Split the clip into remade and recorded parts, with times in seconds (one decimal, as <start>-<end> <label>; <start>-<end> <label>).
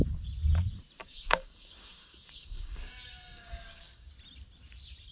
0.0-1.0 recorded; 1.0-4.1 remade; 4.1-5.1 recorded